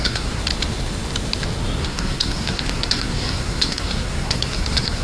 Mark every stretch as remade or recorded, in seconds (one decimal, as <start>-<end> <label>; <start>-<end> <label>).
0.0-0.4 remade; 0.4-1.8 recorded; 1.8-5.0 remade